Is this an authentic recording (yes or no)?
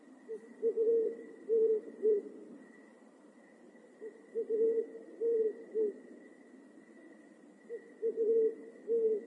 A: no